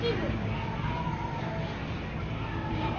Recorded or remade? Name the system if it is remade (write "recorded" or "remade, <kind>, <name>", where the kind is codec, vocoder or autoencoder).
recorded